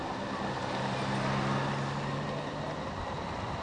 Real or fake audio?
real